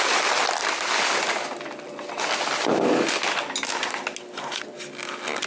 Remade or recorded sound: recorded